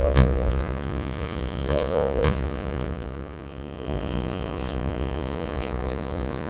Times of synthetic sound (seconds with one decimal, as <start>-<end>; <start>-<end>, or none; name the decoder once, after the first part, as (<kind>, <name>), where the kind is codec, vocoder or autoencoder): 0.0-6.5 (vocoder, Vocos)